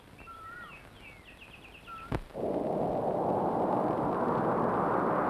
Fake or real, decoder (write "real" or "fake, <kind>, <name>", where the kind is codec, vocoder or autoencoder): real